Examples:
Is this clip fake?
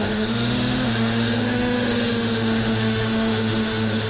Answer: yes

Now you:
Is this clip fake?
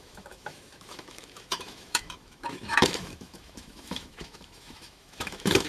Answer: yes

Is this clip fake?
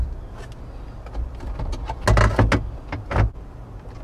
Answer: no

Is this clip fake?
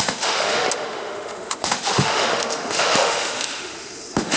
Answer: yes